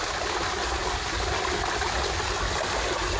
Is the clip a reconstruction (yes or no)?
no